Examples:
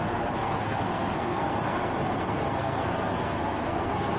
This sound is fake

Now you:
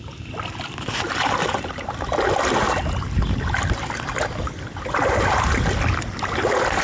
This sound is real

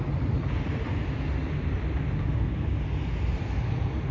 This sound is real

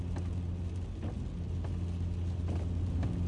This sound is real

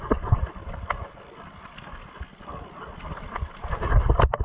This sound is real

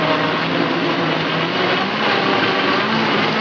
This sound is real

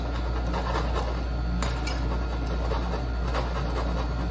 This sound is real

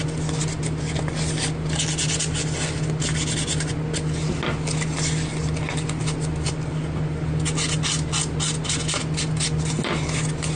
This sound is real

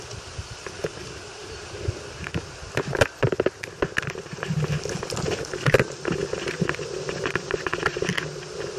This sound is real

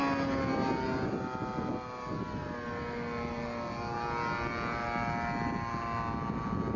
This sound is real